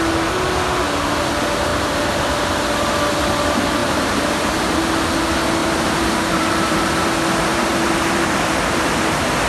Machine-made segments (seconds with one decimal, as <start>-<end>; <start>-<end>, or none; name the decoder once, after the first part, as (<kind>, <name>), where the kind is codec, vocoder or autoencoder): 1.7-2.4 (vocoder, BigVGAN v2); 3.8-4.9; 5.6-6.9; 7.5-9.5